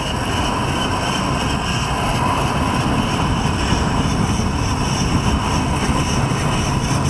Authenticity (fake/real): real